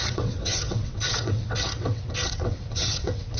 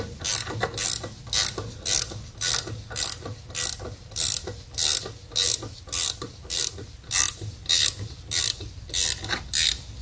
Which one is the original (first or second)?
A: second